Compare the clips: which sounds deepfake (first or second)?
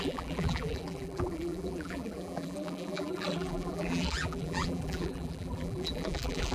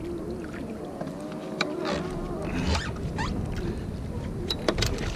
first